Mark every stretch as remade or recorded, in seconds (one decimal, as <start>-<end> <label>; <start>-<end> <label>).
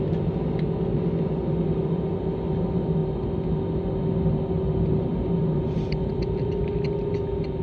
0.0-3.0 recorded; 3.0-3.5 remade; 3.5-5.1 recorded; 5.1-5.8 remade; 5.8-7.6 recorded